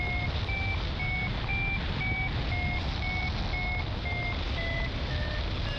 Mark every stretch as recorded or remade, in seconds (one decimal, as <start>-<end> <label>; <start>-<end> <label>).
0.0-5.8 recorded